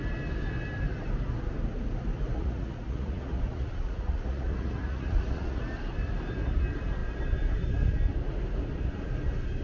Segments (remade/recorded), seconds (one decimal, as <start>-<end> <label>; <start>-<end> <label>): 0.0-2.3 recorded; 2.3-5.6 remade; 5.6-9.6 recorded